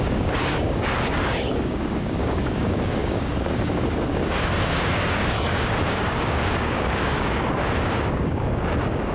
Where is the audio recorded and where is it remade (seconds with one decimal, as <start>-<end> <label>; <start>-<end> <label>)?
0.0-9.1 remade